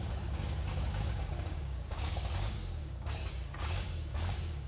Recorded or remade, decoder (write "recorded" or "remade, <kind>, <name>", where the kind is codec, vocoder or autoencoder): remade, codec, DAC